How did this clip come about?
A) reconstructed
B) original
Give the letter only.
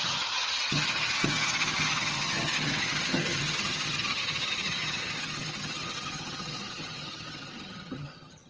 A